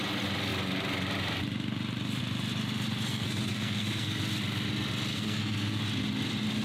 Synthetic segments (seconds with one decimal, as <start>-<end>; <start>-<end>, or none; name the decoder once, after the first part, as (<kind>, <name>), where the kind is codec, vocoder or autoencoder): 3.1-4.2 (codec, SNAC); 5.1-5.8